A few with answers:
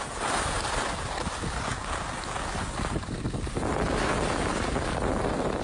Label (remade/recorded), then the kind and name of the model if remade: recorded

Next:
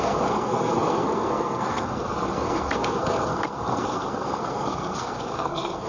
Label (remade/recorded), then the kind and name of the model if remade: remade, codec, SNAC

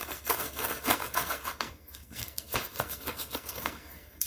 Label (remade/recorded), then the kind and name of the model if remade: remade, codec, SNAC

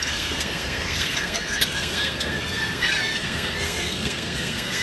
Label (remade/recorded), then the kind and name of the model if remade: remade, codec, SNAC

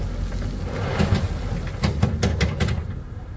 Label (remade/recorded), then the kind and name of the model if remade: recorded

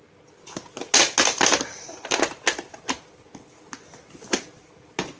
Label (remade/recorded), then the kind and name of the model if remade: recorded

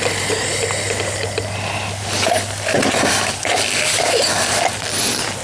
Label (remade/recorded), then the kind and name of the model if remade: recorded